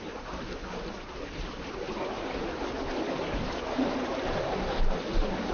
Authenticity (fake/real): real